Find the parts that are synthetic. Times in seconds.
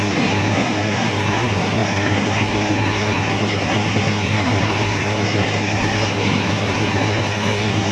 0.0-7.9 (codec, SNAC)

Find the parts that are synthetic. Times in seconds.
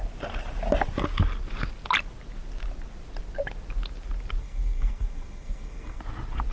4.4-6.0 (codec, SNAC)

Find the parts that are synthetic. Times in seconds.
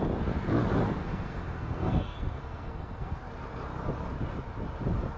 1.0-3.2 (codec, SNAC)